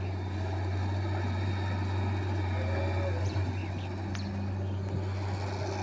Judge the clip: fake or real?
real